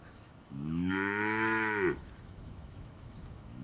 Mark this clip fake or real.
fake